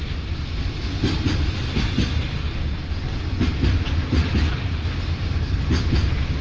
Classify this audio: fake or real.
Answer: real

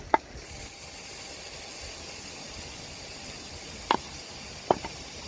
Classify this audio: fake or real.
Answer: real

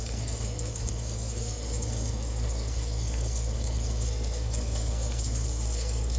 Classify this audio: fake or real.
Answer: fake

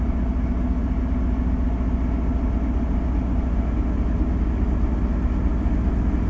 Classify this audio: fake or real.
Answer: real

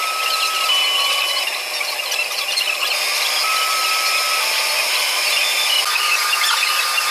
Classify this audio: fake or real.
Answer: real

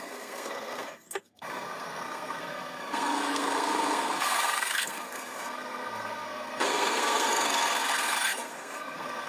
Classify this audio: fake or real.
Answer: fake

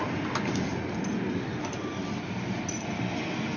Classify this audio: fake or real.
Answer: real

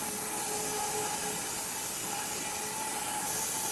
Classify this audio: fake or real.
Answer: real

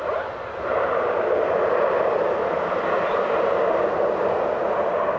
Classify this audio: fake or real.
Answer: real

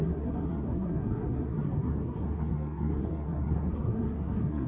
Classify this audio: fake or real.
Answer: fake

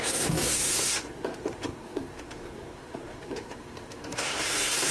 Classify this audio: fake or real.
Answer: fake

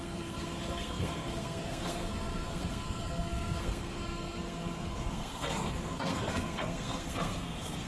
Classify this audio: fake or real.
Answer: fake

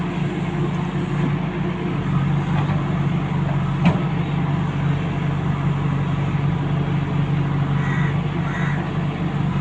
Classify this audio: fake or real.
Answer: real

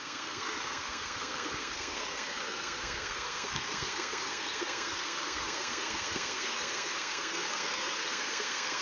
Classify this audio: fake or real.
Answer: fake